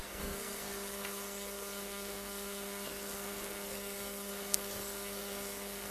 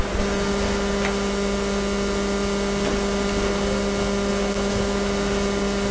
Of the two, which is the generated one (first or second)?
first